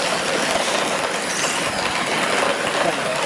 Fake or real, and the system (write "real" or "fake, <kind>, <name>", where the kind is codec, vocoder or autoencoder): real